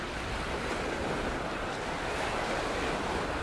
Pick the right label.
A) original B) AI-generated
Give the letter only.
A